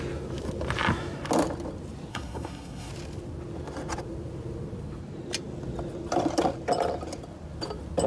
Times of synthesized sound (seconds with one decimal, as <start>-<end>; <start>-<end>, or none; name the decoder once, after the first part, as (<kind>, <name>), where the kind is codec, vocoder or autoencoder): 2.1-2.9 (codec, SNAC)